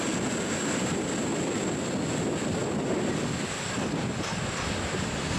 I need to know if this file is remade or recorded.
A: recorded